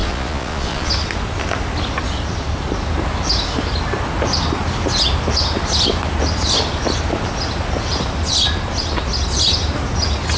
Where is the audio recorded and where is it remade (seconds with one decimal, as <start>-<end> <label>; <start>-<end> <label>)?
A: 0.0-0.9 remade; 0.9-10.4 recorded